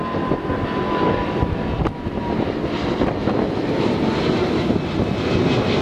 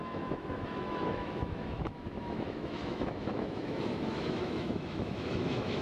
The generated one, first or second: second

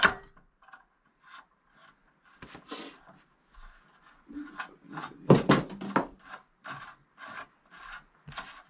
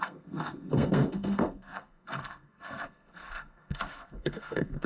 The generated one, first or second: second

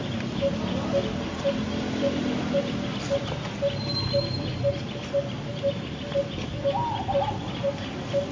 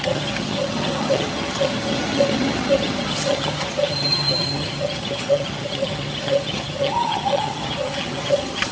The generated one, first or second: second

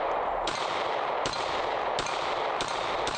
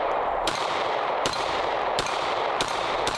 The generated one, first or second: second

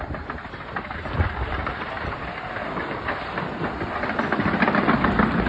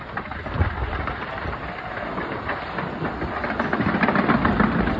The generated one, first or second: first